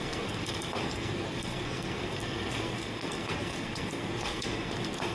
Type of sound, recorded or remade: remade